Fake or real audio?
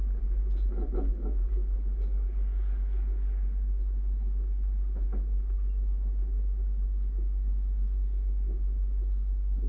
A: real